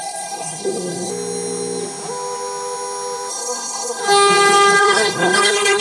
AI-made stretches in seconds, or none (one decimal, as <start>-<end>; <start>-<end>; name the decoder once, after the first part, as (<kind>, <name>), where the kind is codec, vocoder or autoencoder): 0.0-1.1 (codec, SNAC); 3.3-4.0; 4.8-5.8